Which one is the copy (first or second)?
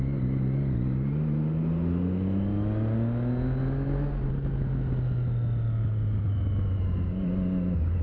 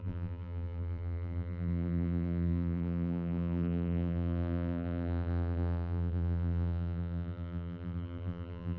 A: second